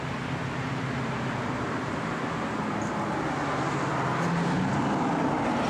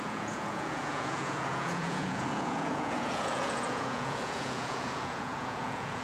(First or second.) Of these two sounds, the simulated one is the second